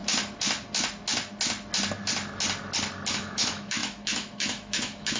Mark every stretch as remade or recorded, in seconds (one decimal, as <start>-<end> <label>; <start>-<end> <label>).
0.0-3.1 recorded; 3.1-5.2 remade